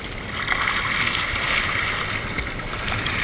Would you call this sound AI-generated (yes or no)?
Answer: no